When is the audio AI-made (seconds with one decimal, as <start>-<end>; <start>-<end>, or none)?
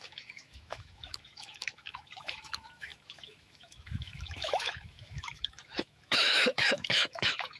0.0-7.6